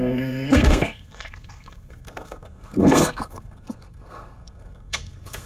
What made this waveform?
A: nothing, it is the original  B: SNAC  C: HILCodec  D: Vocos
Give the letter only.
B